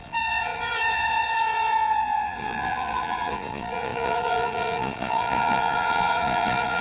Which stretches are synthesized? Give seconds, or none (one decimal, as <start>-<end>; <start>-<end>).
0.0-6.8